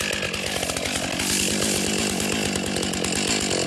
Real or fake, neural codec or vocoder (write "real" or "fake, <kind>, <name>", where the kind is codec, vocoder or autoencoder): real